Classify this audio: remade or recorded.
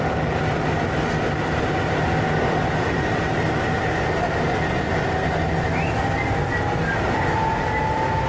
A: recorded